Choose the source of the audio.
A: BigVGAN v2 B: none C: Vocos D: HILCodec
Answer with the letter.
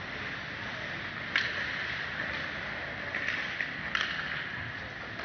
B